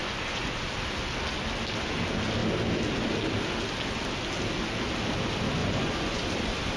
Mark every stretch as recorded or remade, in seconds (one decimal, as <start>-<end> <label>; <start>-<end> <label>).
0.0-0.7 remade; 0.7-5.6 recorded; 5.6-6.2 remade; 6.2-6.8 recorded